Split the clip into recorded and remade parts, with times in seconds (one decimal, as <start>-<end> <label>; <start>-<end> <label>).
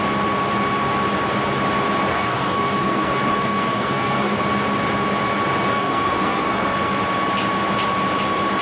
0.0-2.1 recorded; 2.1-4.4 remade; 4.4-5.7 recorded; 5.7-7.0 remade; 7.0-8.6 recorded